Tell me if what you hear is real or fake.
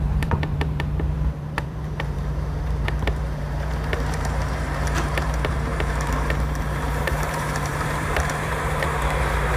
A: fake